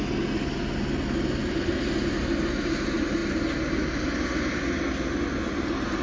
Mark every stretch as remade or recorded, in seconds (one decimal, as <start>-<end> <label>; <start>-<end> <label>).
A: 0.0-6.0 recorded